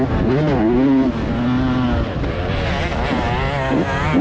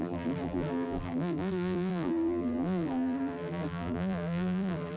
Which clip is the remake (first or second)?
second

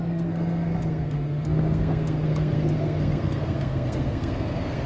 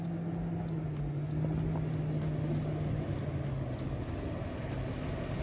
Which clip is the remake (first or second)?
first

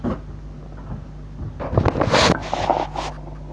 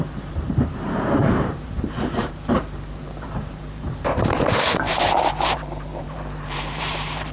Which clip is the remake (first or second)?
second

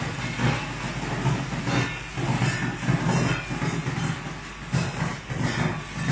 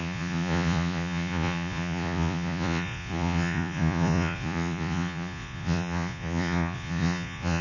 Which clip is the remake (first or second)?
second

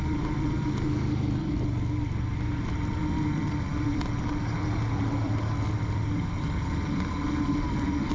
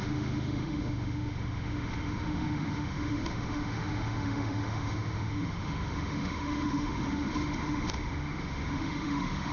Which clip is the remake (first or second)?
second